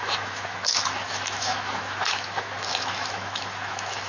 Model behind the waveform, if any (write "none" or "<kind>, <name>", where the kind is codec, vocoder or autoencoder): autoencoder, DAC-VAE